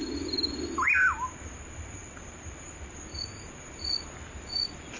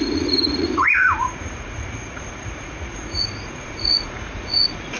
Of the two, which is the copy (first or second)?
second